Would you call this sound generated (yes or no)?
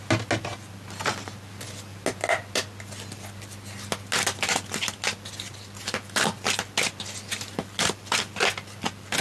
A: no